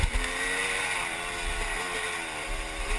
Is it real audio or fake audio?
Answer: real